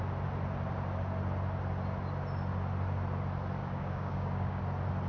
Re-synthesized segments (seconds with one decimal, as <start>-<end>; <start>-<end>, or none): 3.6-4.6